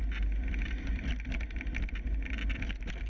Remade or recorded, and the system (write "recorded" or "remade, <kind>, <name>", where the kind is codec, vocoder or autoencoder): recorded